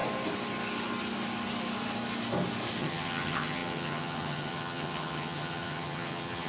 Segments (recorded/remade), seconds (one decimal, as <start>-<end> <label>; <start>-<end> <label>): 0.0-2.8 recorded; 2.8-6.5 remade